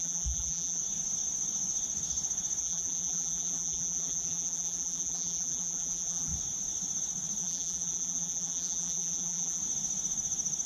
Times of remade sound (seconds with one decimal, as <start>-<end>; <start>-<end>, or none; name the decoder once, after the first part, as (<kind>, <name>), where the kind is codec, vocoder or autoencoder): 0.0-0.8 (vocoder, BigVGAN v2); 2.6-6.3; 7.4-9.6